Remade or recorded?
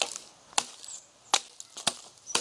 recorded